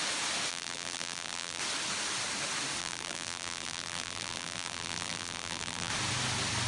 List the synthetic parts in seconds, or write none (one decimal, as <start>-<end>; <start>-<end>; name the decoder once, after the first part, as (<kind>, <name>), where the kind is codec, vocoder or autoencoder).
0.5-1.6 (vocoder, BigVGAN v2); 2.8-5.9